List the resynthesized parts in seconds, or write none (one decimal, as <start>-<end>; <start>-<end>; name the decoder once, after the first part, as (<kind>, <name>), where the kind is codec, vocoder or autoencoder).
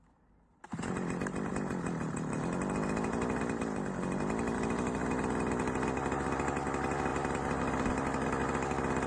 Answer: none